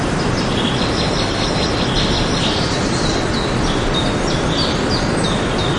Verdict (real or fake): real